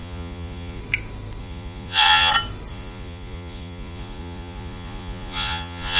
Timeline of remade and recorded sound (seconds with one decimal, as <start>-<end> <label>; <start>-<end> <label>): 0.0-0.8 remade; 0.8-1.4 recorded; 1.4-2.3 remade; 2.3-2.7 recorded; 2.7-6.0 remade